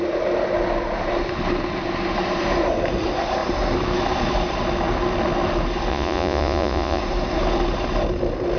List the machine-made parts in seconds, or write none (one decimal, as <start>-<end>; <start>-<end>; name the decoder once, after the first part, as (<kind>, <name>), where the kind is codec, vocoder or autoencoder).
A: 5.9-7.0 (vocoder, Vocos)